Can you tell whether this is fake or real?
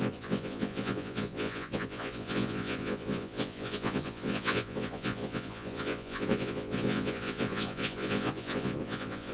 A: fake